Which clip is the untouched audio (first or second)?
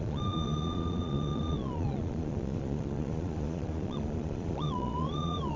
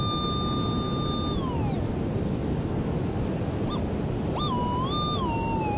second